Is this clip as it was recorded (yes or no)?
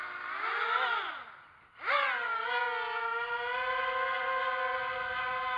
yes